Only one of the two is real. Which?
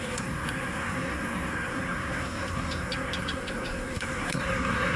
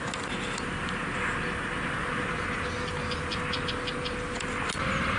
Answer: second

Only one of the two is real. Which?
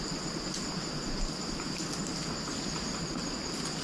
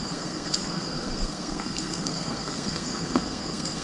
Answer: first